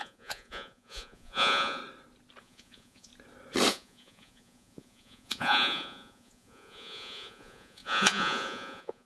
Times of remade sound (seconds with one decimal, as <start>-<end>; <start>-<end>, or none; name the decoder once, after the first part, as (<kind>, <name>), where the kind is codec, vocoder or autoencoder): 0.0-1.8 (vocoder, Vocos); 2.4-3.1; 3.7-9.1